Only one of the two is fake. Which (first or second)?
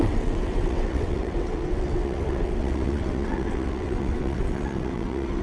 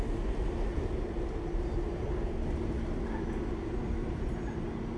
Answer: first